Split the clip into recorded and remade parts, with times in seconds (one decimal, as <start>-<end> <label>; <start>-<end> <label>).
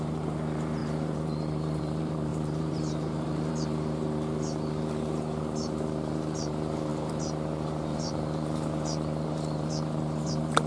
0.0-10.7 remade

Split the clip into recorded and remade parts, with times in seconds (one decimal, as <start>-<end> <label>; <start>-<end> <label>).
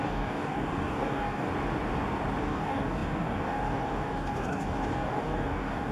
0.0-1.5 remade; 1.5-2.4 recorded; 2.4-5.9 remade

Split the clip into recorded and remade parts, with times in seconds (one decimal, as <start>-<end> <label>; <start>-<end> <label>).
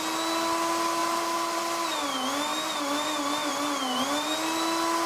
0.0-1.0 recorded; 1.0-1.6 remade; 1.6-5.1 recorded